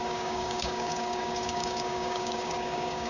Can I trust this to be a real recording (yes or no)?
no